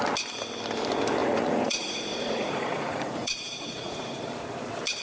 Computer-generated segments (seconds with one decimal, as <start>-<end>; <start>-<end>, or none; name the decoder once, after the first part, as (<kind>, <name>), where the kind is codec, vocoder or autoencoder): 1.2-4.2 (vocoder, Vocos)